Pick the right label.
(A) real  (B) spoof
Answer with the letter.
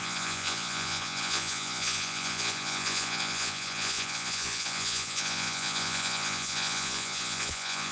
B